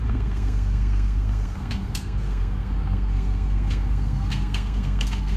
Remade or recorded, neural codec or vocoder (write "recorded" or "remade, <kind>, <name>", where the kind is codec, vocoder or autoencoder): remade, codec, SNAC